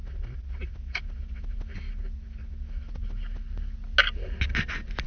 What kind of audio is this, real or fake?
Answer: real